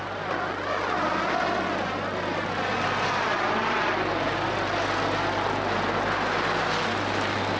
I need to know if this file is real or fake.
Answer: real